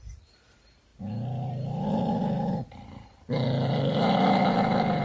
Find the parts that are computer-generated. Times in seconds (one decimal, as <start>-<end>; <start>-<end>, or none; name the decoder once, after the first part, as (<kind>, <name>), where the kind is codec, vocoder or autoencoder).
none